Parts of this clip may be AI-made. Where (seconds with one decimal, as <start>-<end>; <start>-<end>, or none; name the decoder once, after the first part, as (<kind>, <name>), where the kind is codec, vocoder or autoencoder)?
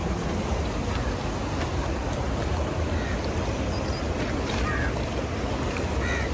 none